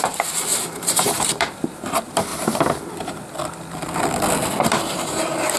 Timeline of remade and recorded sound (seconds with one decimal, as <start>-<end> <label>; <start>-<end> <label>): 0.0-2.3 remade; 2.3-4.6 recorded; 4.6-5.6 remade

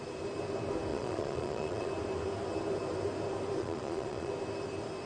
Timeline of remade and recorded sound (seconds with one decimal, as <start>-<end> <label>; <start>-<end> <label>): 0.0-0.9 recorded; 0.9-1.9 remade; 1.9-3.6 recorded; 3.6-4.3 remade; 4.3-5.1 recorded

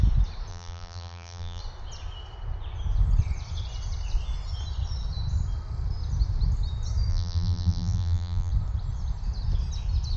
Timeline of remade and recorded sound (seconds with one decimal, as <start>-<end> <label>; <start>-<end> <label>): 0.0-0.5 recorded; 0.5-1.6 remade; 1.6-7.1 recorded; 7.1-8.5 remade; 8.5-10.2 recorded

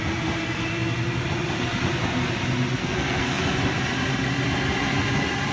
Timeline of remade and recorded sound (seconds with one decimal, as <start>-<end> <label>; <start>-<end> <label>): 0.0-2.8 recorded; 2.8-3.4 remade; 3.4-5.5 recorded

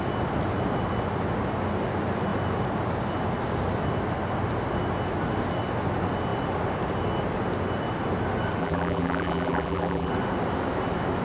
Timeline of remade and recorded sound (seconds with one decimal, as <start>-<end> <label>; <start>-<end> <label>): 0.0-8.6 recorded; 8.6-10.1 remade; 10.1-11.2 recorded